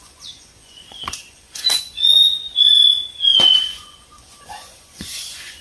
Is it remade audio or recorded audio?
remade